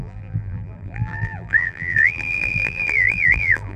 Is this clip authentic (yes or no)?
no